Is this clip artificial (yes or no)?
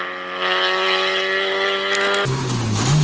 no